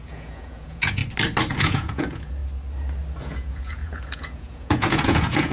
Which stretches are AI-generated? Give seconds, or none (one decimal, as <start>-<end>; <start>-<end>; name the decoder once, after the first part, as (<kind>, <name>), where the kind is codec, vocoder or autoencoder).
0.0-1.0 (vocoder, Vocos); 1.6-2.4; 3.2-5.5